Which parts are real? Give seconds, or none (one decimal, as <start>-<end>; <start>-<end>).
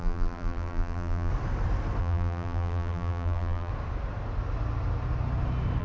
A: 1.3-2.0; 3.7-5.8